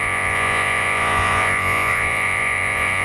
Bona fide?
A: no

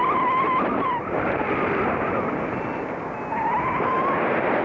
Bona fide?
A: yes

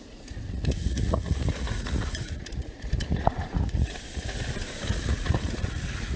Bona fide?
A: no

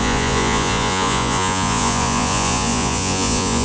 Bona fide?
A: no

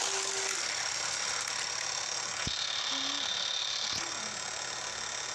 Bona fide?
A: yes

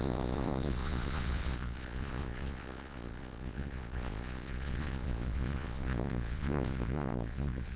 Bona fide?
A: no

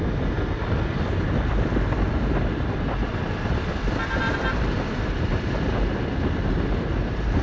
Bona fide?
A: yes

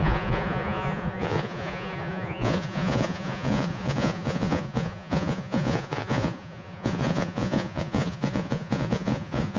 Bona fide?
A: no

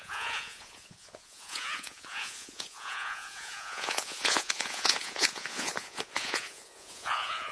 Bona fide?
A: no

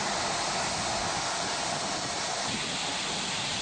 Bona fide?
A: yes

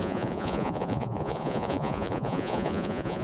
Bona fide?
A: no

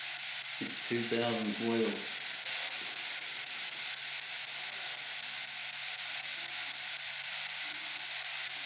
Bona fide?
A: yes